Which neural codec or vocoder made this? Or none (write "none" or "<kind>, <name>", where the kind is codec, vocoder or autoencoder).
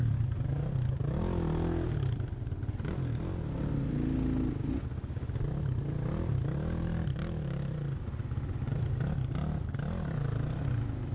none